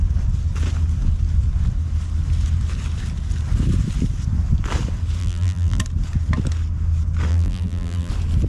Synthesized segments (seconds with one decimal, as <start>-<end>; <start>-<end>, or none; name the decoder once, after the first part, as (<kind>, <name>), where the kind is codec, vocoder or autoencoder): 5.2-5.8 (vocoder, BigVGAN v2); 7.3-8.1